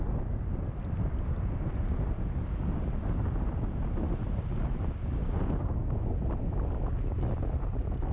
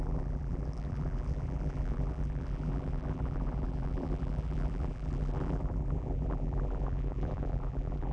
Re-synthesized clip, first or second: second